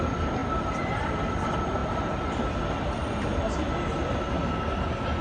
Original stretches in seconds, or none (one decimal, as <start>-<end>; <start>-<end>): 0.0-5.2